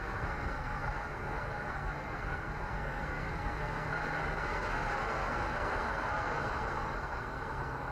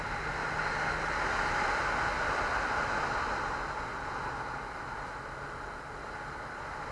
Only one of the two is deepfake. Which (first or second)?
first